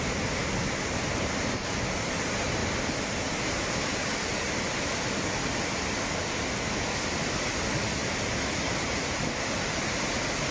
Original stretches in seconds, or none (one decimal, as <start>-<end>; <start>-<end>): 0.0-10.5

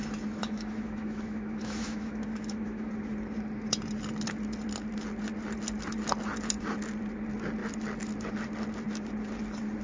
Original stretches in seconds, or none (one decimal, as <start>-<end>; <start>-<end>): 0.0-0.4; 2.9-9.8

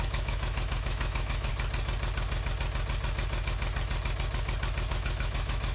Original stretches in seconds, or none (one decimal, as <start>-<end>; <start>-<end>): 1.5-4.9